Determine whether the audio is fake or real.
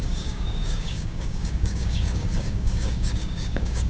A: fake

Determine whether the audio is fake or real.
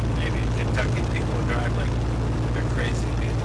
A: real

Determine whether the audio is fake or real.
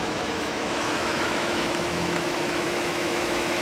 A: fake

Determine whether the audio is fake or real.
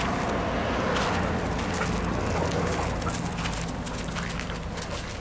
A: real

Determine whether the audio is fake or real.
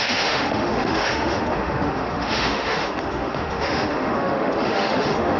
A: fake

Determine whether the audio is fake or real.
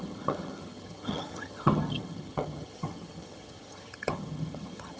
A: fake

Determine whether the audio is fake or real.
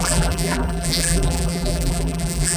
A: fake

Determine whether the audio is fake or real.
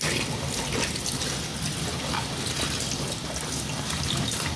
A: real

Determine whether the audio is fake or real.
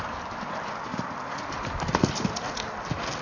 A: real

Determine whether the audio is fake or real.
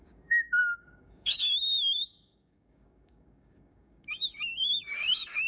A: fake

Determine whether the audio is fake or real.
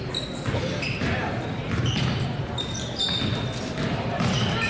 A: real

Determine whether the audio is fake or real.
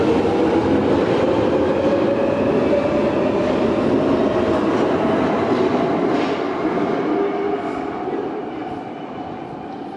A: real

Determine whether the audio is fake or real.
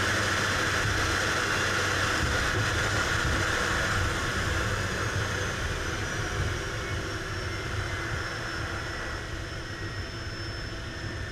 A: real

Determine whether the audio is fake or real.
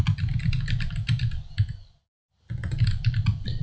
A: fake